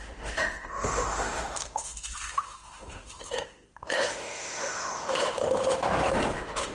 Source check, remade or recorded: remade